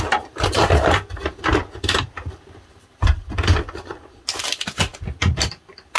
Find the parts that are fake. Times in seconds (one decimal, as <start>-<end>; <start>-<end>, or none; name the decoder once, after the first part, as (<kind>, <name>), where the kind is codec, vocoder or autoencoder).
none